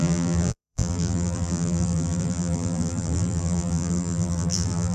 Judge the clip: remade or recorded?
remade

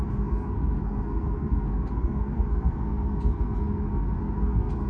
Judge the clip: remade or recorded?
remade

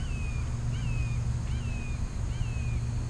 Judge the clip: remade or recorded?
recorded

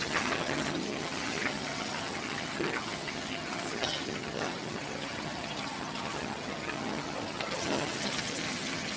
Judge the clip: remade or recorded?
remade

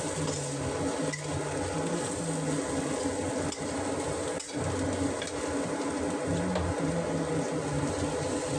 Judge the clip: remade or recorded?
recorded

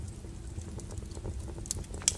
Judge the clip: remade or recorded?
recorded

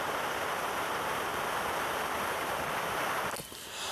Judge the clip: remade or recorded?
recorded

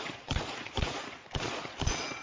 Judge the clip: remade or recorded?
remade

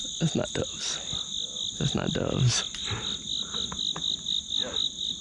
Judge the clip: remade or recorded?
recorded